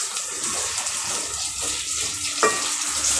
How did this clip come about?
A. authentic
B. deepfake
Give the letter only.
A